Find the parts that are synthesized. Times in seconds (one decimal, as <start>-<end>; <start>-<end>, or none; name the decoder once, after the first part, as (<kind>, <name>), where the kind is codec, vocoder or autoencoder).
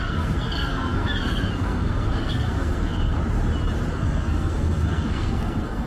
0.0-3.2 (codec, SNAC); 3.9-5.9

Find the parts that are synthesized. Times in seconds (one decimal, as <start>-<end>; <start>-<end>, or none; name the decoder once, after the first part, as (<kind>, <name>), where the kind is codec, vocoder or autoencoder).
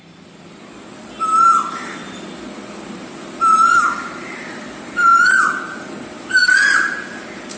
none